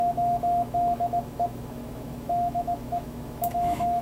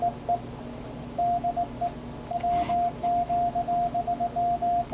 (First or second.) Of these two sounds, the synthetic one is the first